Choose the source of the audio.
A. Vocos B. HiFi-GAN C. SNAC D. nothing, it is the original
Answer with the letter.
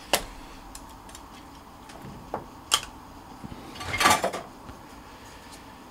D